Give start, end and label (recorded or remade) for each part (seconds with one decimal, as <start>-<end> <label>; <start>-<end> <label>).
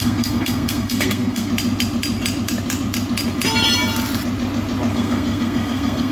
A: 0.0-1.5 remade; 1.5-4.9 recorded; 4.9-6.1 remade